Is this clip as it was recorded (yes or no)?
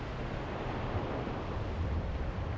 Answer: yes